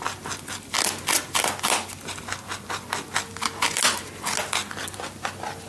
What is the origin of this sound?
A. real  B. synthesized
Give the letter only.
A